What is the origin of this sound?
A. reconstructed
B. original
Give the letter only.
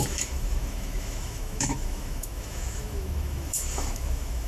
A